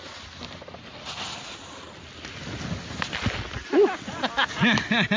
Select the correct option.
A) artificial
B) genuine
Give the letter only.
B